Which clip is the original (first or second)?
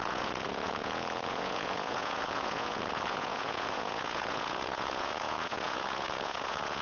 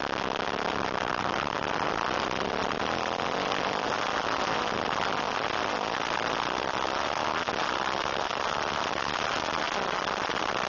second